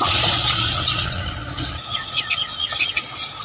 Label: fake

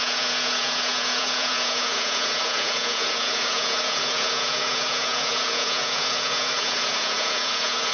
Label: fake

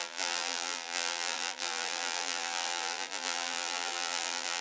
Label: fake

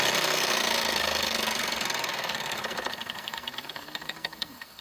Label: fake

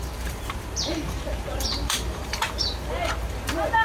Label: fake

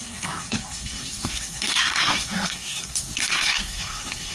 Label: fake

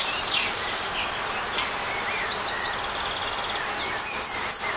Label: real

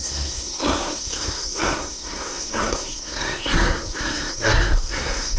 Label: fake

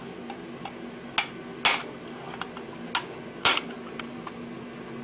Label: real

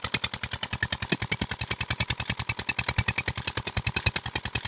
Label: real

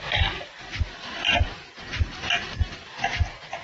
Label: real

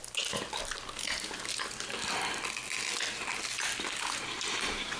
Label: real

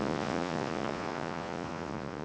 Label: fake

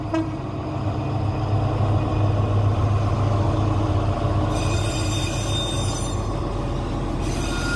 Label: real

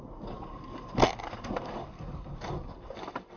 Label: fake